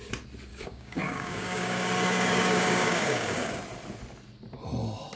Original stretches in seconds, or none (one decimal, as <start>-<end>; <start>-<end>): 0.0-0.5; 3.6-5.2